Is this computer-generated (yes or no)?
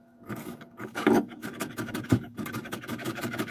yes